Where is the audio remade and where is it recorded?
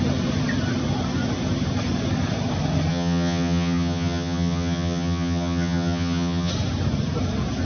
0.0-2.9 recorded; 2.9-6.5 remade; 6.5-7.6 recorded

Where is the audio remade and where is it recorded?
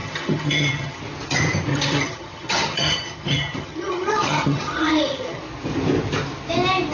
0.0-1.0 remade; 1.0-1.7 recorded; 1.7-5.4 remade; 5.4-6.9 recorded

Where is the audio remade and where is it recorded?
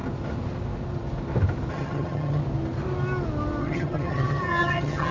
0.0-1.7 recorded; 1.7-2.4 remade; 2.4-3.6 recorded; 3.6-5.1 remade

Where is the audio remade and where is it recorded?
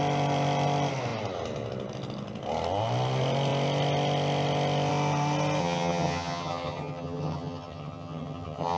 0.0-5.6 recorded; 5.6-8.8 remade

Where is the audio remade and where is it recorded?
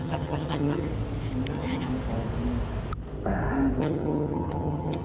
0.0-0.9 remade; 0.9-1.5 recorded; 1.5-1.9 remade; 1.9-3.8 recorded; 3.8-5.0 remade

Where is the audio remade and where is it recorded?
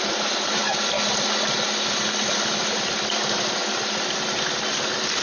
0.0-5.2 recorded